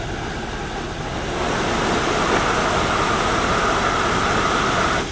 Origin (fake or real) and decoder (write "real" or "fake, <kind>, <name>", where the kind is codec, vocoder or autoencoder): real